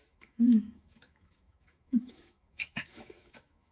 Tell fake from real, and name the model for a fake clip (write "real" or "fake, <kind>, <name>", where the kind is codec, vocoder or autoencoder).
fake, autoencoder, DAC-VAE